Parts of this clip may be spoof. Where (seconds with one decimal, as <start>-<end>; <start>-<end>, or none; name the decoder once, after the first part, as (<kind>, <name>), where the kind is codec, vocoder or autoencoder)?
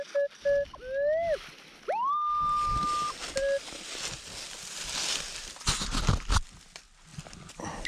none